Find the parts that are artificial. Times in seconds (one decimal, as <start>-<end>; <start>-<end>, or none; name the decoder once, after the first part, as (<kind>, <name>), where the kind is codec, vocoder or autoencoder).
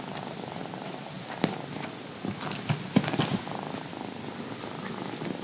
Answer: none